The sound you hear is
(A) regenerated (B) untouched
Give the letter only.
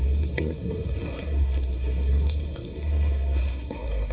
A